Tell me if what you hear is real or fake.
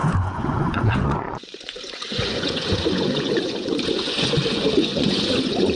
fake